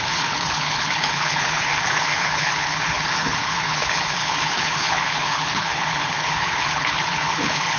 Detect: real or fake fake